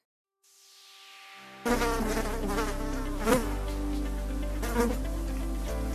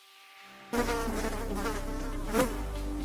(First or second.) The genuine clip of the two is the first